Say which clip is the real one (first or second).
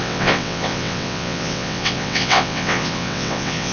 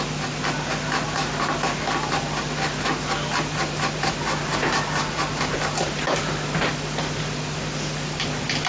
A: second